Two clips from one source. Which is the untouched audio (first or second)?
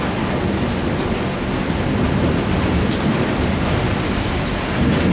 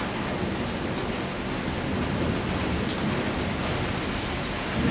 second